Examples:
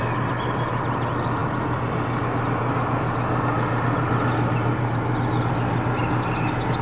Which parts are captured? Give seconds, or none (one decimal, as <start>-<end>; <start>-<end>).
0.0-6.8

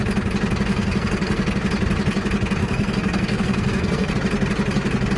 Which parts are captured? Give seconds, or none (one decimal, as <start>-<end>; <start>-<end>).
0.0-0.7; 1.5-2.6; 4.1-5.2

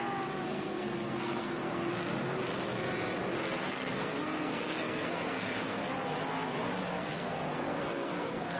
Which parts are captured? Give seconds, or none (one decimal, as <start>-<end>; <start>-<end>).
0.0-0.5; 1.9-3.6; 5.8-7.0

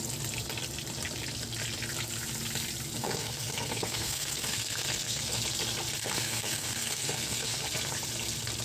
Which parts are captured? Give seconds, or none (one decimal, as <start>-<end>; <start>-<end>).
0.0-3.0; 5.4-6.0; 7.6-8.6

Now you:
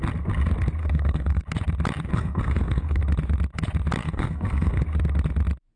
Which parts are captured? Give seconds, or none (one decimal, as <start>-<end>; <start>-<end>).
0.0-0.8; 1.4-2.1; 3.0-4.0; 4.8-5.8

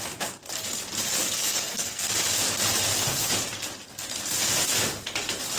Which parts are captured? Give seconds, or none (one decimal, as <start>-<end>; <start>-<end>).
0.0-1.4; 2.1-5.6